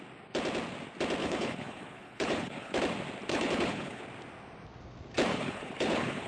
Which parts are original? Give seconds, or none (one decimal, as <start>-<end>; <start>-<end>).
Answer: 0.0-1.2; 2.8-3.3; 4.0-5.3